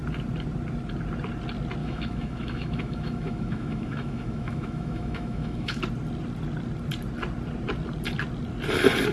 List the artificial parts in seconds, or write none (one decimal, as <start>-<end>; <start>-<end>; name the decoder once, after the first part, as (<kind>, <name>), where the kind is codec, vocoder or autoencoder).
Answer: 1.8-5.8 (autoencoder, DAC-VAE)